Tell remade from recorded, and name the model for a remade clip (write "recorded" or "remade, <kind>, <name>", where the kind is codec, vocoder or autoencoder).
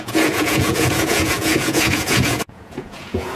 remade, vocoder, Vocos